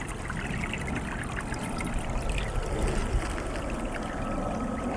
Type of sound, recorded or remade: recorded